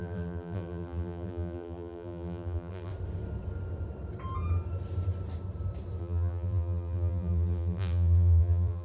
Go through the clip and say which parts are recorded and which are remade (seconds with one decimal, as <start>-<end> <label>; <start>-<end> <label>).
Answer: 0.0-2.9 remade; 2.9-6.0 recorded; 6.0-8.8 remade